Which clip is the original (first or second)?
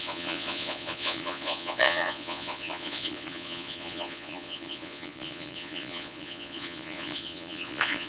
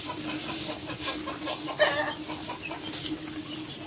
second